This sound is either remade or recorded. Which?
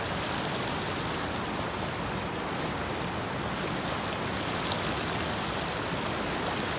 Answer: recorded